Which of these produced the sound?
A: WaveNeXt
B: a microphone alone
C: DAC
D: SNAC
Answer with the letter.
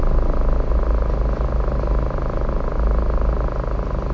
B